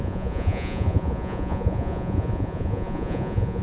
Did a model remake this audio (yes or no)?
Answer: yes